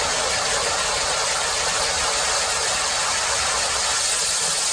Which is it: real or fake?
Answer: fake